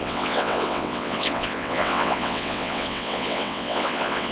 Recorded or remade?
remade